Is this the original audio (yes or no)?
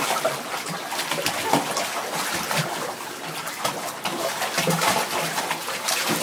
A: yes